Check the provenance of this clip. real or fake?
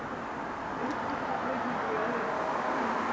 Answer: real